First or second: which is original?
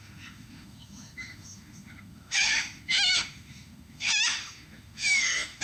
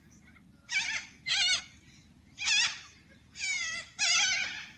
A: second